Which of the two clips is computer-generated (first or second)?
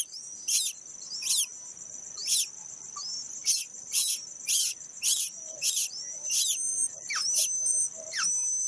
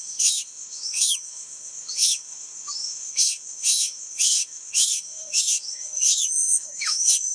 second